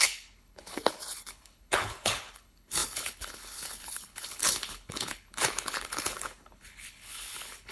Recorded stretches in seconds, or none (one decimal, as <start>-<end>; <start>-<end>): none